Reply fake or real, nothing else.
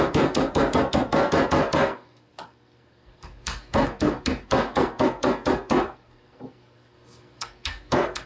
fake